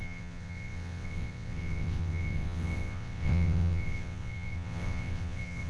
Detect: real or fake fake